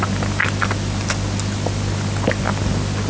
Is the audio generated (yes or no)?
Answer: no